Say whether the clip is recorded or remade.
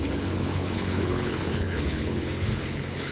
remade